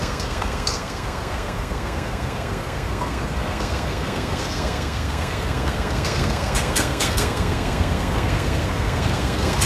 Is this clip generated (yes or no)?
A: yes